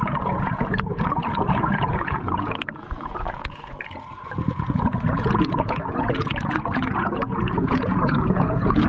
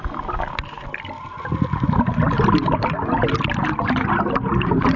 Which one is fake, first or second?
first